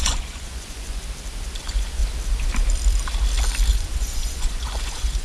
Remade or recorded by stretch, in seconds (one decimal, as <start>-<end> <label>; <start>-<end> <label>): 0.0-1.0 remade; 1.0-1.6 recorded; 1.6-2.0 remade; 2.0-3.7 recorded; 3.7-5.2 remade